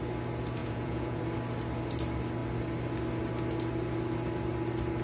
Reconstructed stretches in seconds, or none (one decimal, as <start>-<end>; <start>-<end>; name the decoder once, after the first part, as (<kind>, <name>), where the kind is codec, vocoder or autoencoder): 0.6-1.2 (vocoder, Vocos)